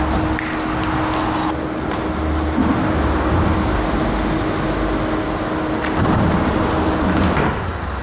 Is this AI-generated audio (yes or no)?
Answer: no